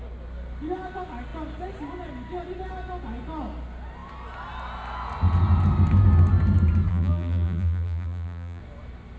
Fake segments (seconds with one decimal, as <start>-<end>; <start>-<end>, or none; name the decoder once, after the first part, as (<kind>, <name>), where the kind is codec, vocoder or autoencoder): 6.9-8.6 (vocoder, BigVGAN v2)